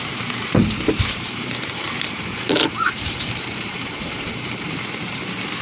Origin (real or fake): fake